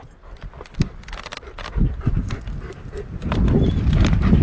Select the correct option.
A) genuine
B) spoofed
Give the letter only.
A